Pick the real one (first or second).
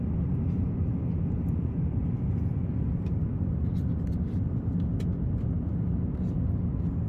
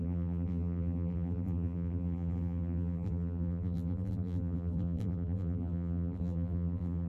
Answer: first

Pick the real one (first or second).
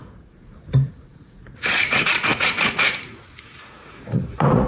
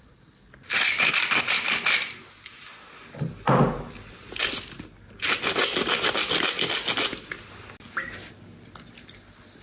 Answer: second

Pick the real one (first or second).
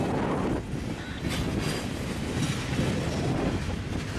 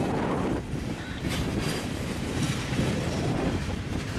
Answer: first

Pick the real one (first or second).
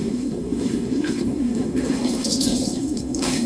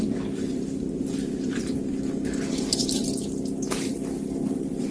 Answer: second